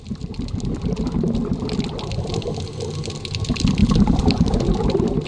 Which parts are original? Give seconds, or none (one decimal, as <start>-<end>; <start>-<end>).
0.0-3.8; 4.6-5.3